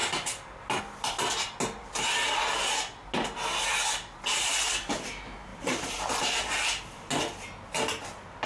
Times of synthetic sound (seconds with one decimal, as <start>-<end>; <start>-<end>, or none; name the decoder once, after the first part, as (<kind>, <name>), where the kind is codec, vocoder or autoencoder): 5.5-6.9 (vocoder, BigVGAN v2)